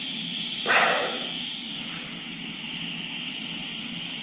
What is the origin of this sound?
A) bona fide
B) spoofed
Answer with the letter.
A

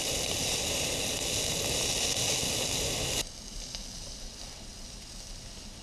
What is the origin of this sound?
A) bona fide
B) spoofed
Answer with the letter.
A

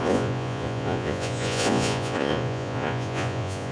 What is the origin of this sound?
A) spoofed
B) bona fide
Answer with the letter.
A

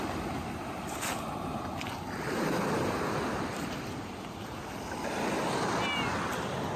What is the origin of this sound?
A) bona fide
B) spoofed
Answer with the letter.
A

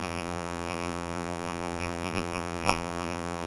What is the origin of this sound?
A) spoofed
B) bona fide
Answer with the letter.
A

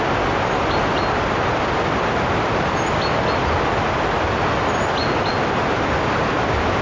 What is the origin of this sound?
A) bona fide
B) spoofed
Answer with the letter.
A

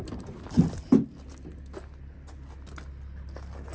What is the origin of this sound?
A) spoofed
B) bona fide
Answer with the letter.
B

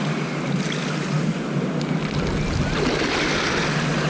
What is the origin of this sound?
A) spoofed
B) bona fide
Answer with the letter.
B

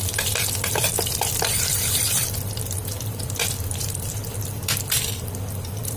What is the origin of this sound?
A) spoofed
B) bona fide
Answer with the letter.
A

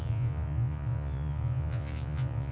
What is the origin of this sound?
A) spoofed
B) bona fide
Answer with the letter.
A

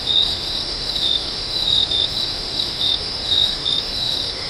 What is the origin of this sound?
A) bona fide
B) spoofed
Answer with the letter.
B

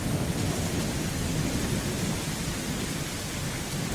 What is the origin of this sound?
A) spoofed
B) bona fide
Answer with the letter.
B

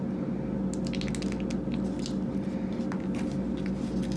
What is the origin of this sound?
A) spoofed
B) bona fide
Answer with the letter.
B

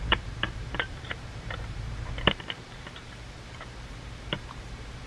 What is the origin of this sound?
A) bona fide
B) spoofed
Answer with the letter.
B